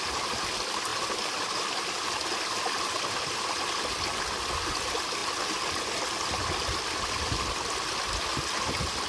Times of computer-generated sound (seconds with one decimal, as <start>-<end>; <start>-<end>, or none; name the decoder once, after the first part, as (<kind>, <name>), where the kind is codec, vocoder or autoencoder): none